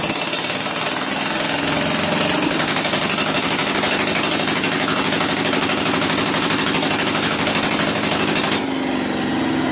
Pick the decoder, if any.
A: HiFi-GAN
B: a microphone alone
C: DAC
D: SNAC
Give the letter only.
B